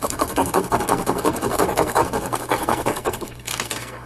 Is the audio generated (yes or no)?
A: yes